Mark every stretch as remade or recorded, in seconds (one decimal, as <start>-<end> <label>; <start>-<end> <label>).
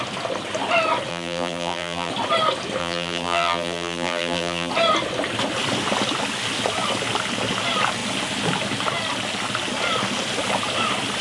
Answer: 0.0-1.1 recorded; 1.1-2.1 remade; 2.1-2.8 recorded; 2.8-4.7 remade; 4.7-11.2 recorded